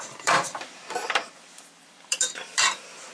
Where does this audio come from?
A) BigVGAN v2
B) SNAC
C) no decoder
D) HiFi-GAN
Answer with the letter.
A